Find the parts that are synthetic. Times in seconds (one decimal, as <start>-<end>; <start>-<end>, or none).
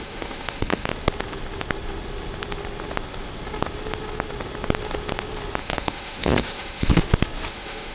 0.0-0.9; 5.6-7.0; 7.5-7.9